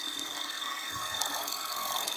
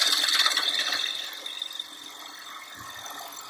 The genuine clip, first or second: second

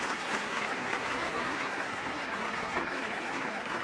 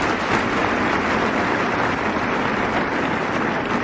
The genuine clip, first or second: second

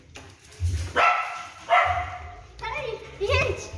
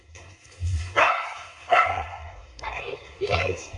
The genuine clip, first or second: first